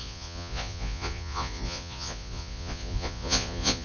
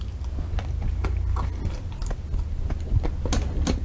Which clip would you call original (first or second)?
second